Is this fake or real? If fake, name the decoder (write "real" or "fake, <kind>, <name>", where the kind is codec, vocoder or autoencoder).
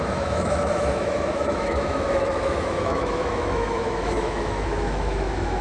fake, autoencoder, DAC-VAE